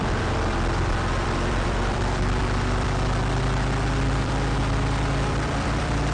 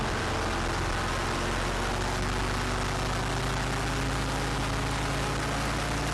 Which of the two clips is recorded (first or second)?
second